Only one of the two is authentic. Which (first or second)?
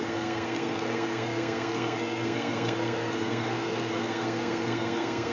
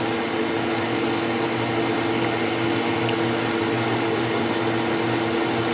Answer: second